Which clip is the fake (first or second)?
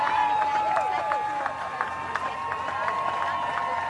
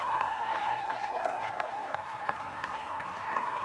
second